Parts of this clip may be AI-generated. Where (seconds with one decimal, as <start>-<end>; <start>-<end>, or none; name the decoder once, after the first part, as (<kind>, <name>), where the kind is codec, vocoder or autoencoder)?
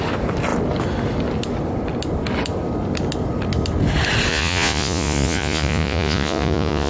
4.3-6.9 (vocoder, Vocos)